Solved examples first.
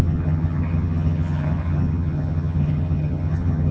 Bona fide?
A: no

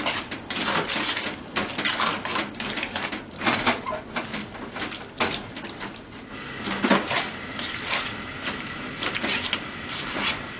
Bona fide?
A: yes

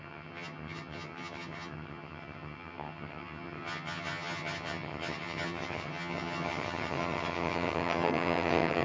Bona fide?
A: no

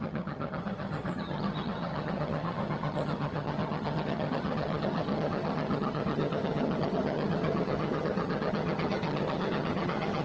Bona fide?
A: no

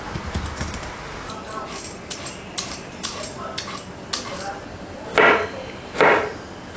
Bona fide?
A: yes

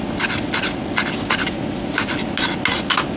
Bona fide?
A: yes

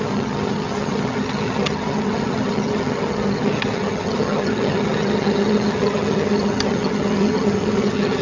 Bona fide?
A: no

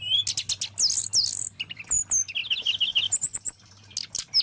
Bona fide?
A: yes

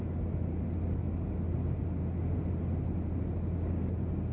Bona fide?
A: yes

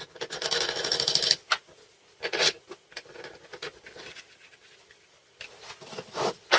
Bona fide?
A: yes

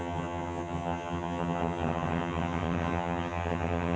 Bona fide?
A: no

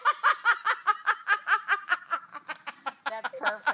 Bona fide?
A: yes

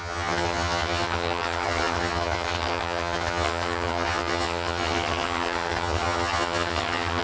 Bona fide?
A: no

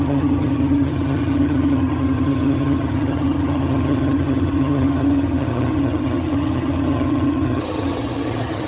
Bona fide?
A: no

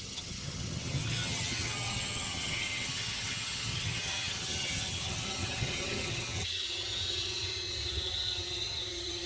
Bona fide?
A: no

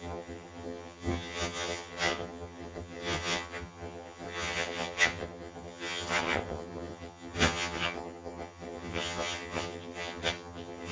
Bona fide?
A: no